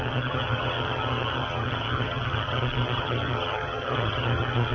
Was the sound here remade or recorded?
remade